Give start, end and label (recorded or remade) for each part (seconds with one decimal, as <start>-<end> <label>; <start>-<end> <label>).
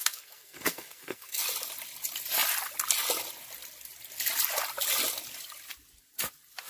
0.0-1.5 remade; 1.5-6.7 recorded